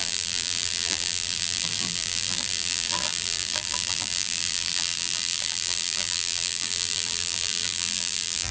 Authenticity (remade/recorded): remade